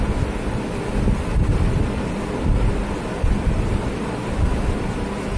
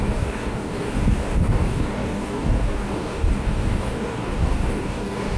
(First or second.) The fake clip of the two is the second